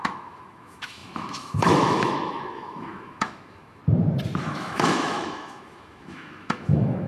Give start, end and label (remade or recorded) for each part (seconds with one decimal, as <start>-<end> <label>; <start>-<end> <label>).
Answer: 0.0-3.8 remade; 3.8-4.4 recorded; 4.4-7.1 remade